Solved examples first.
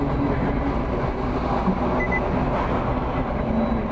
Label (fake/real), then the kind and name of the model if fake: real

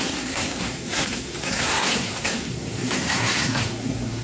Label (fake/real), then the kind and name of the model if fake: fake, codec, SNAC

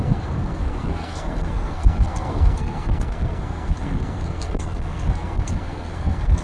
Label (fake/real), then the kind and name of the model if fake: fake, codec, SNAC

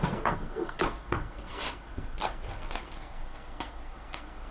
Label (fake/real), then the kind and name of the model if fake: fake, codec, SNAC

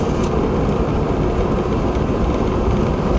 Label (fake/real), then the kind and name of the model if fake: real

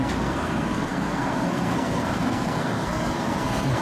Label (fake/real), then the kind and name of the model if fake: fake, codec, SNAC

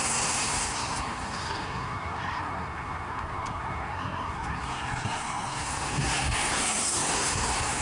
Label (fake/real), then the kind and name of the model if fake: fake, codec, SNAC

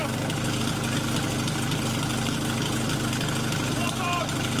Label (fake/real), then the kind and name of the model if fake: real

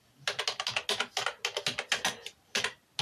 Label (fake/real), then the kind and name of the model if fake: real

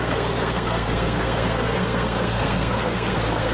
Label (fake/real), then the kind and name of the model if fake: fake, codec, SNAC